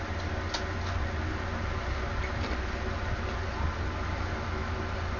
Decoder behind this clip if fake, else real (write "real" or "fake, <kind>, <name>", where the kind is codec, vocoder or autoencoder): real